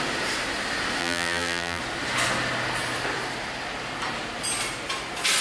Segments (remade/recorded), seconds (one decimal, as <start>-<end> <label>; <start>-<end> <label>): 0.0-1.0 recorded; 1.0-1.8 remade; 1.8-5.4 recorded